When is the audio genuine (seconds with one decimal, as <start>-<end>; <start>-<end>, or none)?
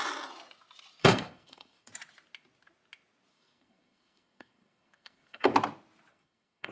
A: 0.0-1.0; 1.9-3.3; 5.5-6.1